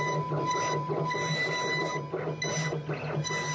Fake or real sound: real